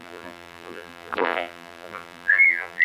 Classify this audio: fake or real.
fake